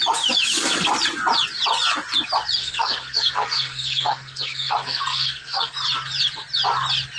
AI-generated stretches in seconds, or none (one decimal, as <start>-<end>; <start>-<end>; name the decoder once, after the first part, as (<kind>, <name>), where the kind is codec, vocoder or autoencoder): 2.6-5.7 (codec, SNAC)